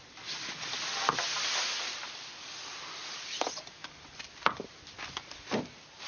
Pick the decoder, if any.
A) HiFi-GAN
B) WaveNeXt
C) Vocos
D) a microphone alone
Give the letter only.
D